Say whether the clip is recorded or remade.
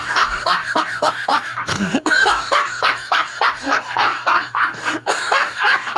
remade